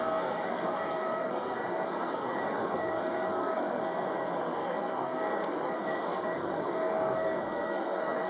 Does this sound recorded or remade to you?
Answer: remade